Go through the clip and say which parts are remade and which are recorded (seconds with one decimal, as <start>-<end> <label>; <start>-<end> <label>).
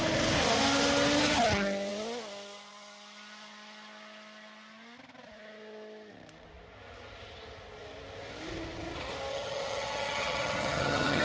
0.0-9.3 recorded; 9.3-11.2 remade